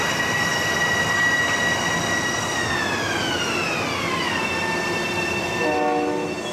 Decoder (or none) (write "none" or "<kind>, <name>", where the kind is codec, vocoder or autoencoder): none